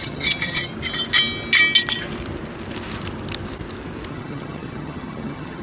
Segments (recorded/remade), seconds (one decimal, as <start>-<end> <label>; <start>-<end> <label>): 0.0-0.7 remade; 0.7-4.1 recorded; 4.1-5.6 remade